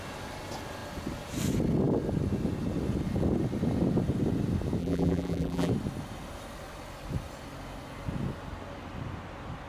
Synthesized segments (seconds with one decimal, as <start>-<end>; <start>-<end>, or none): 4.8-5.7